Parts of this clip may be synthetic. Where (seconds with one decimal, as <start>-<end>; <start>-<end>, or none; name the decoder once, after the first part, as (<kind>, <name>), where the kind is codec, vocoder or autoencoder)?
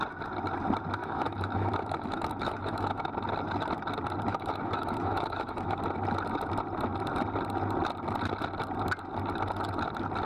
1.0-3.1 (autoencoder, DAC-VAE); 4.3-5.8